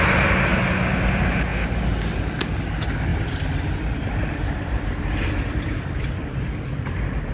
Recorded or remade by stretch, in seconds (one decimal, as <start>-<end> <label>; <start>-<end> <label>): 0.0-0.5 recorded; 0.5-1.1 remade; 1.1-3.1 recorded; 3.1-7.3 remade